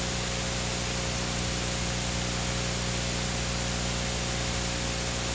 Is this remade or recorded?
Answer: recorded